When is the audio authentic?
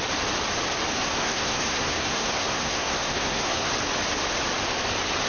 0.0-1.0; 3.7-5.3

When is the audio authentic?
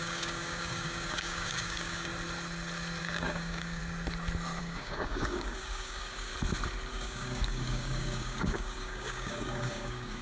2.1-3.0; 3.8-4.6; 6.3-6.9